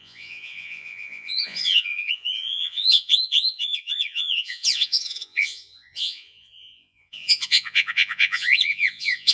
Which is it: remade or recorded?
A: remade